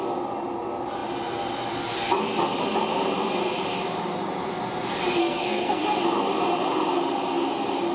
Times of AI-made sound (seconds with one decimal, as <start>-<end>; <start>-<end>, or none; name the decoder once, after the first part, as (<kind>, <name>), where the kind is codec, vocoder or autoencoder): 5.2-5.8 (codec, SNAC)